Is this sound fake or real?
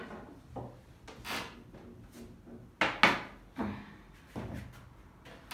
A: real